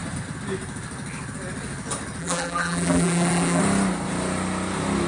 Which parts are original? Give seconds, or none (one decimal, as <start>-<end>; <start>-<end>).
0.0-2.2; 3.6-5.1